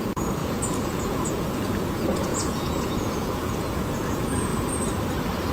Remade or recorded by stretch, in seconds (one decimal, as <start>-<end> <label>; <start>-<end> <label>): 0.0-4.5 remade; 4.5-5.5 recorded